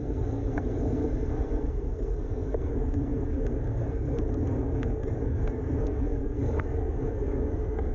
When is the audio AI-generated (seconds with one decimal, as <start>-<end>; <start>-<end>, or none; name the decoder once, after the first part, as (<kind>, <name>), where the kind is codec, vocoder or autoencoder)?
0.0-7.9 (codec, SNAC)